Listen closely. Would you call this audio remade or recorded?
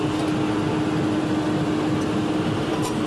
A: recorded